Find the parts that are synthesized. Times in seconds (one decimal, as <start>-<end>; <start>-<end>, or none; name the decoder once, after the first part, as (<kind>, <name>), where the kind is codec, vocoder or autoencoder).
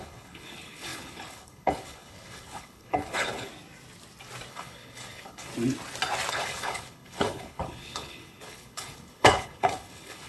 0.0-3.5 (codec, HILCodec); 4.5-5.5; 6.3-10.3